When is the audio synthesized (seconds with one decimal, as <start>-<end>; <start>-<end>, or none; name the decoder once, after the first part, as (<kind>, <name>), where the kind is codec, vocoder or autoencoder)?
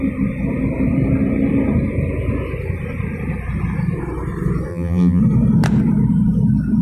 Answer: 4.7-5.2 (vocoder, BigVGAN v2)